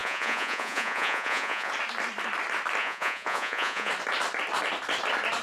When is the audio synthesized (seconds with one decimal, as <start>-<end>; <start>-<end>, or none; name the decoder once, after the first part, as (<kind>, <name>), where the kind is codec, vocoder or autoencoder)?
0.0-1.7 (vocoder, Vocos); 2.8-3.9